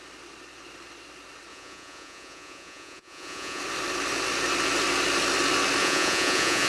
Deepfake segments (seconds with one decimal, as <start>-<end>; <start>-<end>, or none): 1.5-3.6; 5.8-6.7